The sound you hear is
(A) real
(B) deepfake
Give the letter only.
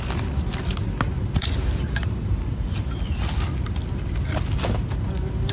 A